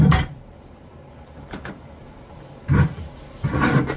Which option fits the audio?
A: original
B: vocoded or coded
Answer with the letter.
B